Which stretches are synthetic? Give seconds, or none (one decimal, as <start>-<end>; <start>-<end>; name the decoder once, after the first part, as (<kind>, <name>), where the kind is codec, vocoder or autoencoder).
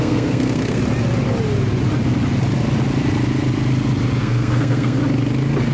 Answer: 0.0-0.8 (codec, SNAC); 4.2-5.0